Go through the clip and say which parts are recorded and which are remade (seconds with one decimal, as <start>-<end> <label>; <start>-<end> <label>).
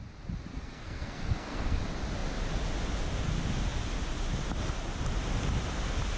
0.0-0.5 recorded; 0.5-1.8 remade; 1.8-6.2 recorded